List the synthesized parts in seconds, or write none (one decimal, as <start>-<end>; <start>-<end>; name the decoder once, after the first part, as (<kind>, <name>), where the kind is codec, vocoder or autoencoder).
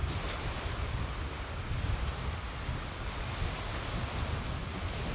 none